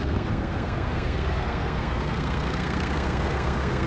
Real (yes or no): no